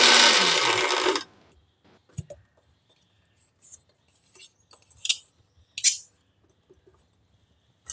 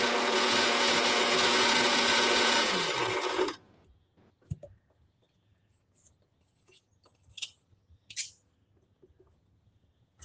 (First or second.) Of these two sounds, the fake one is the second